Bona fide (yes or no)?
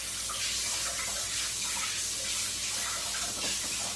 yes